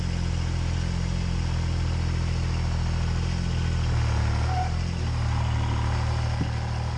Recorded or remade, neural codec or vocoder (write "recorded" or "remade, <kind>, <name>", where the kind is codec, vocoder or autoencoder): recorded